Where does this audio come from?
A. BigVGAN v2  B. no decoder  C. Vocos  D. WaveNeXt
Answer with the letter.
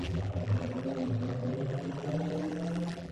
A